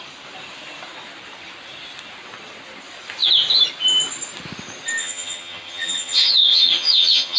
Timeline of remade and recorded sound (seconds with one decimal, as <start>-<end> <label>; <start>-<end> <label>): 0.0-5.0 recorded; 5.0-7.4 remade